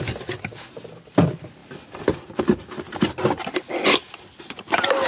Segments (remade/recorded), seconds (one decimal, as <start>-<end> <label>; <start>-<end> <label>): 0.0-5.1 recorded